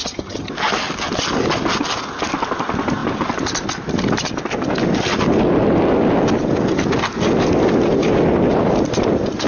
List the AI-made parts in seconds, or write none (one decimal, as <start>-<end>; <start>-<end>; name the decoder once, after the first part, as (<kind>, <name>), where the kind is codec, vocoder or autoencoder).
0.0-0.5 (vocoder, HiFi-GAN)